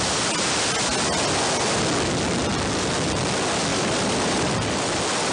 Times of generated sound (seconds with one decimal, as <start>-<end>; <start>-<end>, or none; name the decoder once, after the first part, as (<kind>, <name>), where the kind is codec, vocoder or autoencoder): 3.7-4.8 (vocoder, BigVGAN v2)